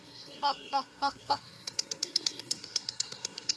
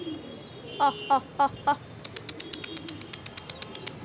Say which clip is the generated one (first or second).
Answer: first